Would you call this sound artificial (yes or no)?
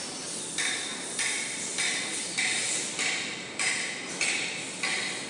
no